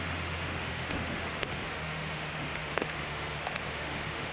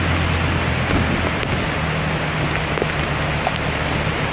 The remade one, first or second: first